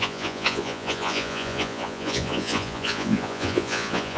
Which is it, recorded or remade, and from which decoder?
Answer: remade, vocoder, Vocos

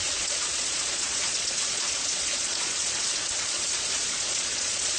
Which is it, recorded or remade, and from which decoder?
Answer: remade, vocoder, Vocos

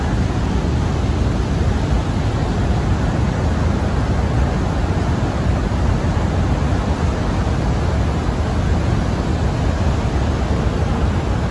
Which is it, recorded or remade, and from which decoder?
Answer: recorded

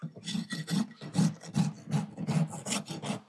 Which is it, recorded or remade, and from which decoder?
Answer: recorded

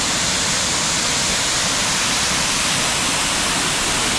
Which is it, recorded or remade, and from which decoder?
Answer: recorded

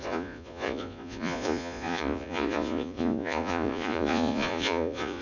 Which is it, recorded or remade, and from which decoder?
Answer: remade, vocoder, Vocos